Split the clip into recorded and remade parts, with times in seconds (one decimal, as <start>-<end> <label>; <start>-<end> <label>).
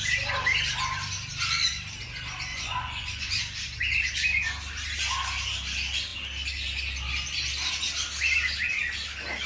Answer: 0.0-2.5 recorded; 2.5-3.4 remade; 3.4-9.5 recorded